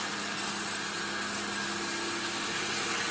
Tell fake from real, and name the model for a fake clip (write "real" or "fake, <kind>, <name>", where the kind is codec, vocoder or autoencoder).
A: real